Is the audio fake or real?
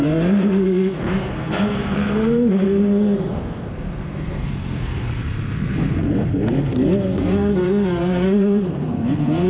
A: fake